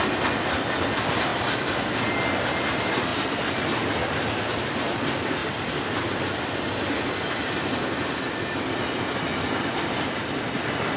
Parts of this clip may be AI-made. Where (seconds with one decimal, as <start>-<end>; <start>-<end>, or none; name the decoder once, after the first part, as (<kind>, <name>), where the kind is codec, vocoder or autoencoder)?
none